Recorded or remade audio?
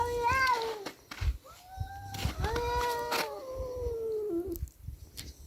recorded